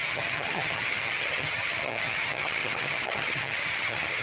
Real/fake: fake